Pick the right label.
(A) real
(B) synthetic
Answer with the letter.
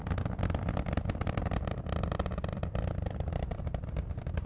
B